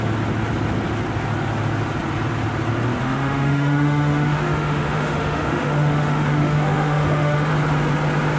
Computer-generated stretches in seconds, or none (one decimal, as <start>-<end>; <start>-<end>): 3.0-7.5